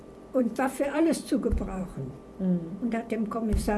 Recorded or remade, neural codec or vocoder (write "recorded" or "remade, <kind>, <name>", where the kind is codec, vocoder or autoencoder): remade, vocoder, BigVGAN v2